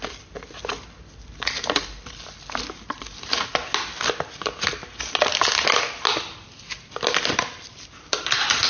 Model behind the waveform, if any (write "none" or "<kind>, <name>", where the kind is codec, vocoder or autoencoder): none